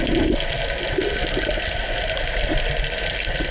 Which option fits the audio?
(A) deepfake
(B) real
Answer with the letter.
B